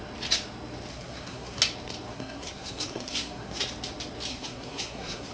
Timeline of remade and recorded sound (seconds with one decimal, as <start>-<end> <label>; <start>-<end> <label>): 0.0-0.9 recorded; 0.9-1.6 remade; 1.6-2.1 recorded; 2.1-3.6 remade; 3.6-4.3 recorded; 4.3-5.3 remade